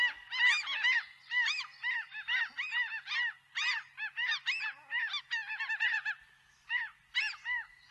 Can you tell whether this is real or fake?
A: real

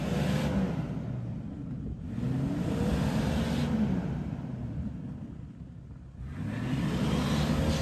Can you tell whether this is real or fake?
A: real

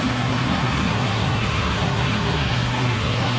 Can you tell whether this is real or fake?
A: fake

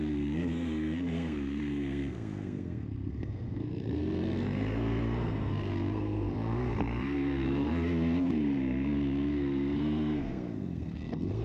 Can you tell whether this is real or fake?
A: fake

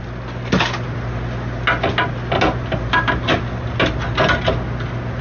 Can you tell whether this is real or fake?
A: real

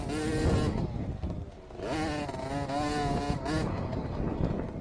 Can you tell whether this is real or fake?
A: real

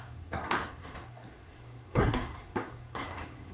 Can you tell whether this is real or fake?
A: fake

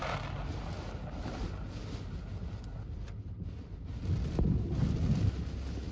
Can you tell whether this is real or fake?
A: real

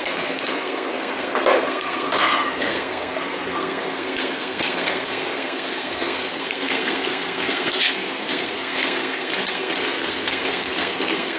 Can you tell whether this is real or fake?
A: fake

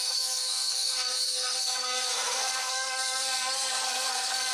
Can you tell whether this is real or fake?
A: fake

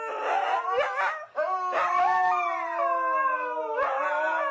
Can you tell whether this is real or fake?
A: real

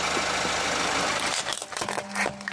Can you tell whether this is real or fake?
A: real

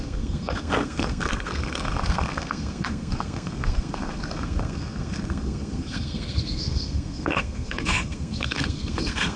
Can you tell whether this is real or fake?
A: fake